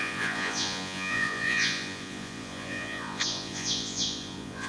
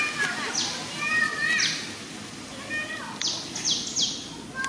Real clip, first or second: second